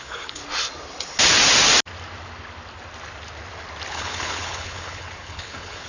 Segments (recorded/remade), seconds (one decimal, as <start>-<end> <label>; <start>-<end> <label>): 0.0-0.4 remade; 0.4-3.9 recorded; 3.9-5.9 remade